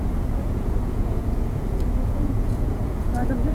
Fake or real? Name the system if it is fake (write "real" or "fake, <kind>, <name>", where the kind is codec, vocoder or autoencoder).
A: fake, vocoder, Vocos